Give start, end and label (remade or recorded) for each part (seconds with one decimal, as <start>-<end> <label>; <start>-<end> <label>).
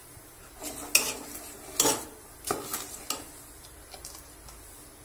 0.0-5.0 recorded